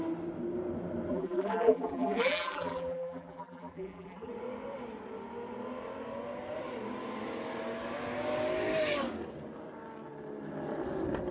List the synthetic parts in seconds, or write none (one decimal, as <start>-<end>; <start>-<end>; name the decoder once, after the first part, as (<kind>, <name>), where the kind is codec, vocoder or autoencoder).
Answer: 1.1-4.3 (vocoder, BigVGAN v2)